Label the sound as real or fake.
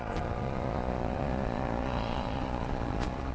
fake